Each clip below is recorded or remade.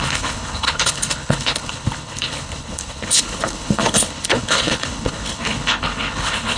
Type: remade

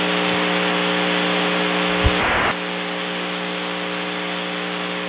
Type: recorded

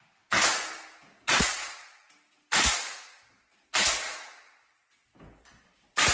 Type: recorded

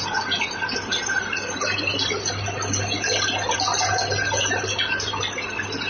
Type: recorded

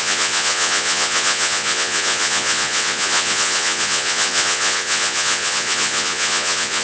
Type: remade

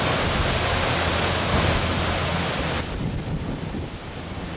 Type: recorded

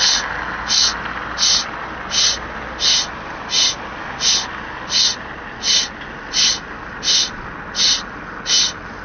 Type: recorded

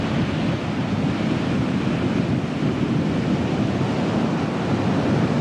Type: recorded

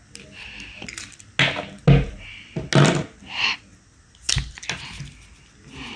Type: recorded